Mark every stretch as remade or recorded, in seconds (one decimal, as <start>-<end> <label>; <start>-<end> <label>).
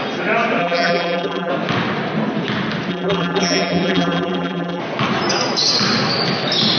0.0-0.6 recorded; 0.6-1.5 remade; 1.5-2.9 recorded; 2.9-4.8 remade; 4.8-6.8 recorded